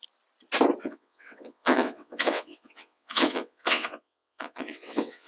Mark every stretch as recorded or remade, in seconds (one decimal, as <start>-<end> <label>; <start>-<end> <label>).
0.0-0.8 recorded; 0.8-5.3 remade